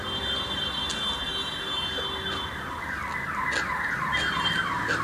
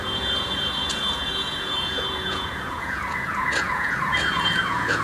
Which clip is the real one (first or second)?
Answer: first